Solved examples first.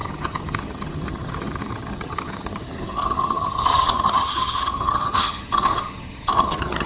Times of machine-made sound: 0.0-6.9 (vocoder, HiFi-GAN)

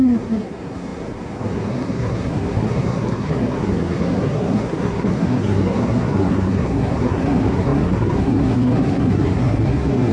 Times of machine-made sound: 0.0-10.1 (codec, SNAC)

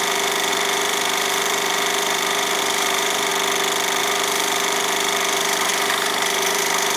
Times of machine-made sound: 0.0-3.3 (vocoder, BigVGAN v2); 4.0-7.0

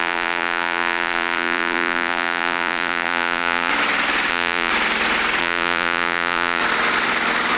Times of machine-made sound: 0.0-3.7 (vocoder, BigVGAN v2); 4.3-4.7; 5.4-6.6

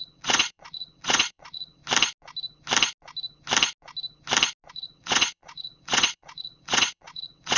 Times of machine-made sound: 0.0-1.8 (vocoder, Vocos); 4.7-7.6

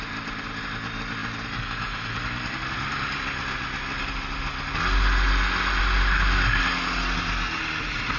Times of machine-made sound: none

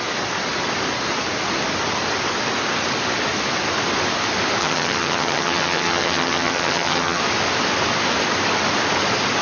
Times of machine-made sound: 4.6-7.2 (vocoder, HiFi-GAN)